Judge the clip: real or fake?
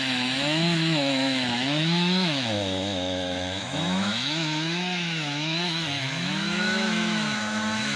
fake